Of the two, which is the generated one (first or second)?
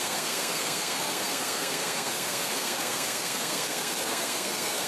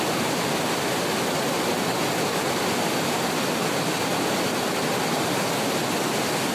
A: first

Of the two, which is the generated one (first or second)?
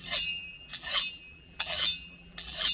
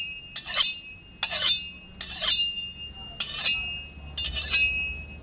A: first